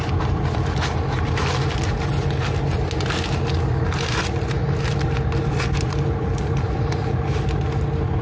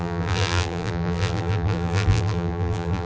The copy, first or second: second